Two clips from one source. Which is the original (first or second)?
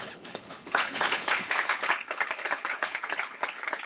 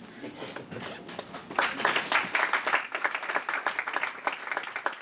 second